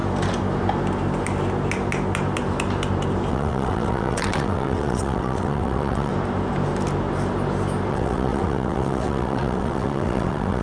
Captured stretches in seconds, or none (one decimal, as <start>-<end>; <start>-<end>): 0.0-3.3; 6.1-7.9